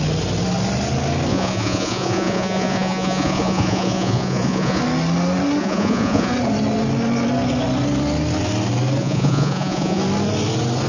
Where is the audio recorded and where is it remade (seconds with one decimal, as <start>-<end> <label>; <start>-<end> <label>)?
0.0-1.3 recorded; 1.3-4.8 remade; 4.8-5.6 recorded; 5.6-6.3 remade; 6.3-9.0 recorded; 9.0-10.0 remade; 10.0-10.9 recorded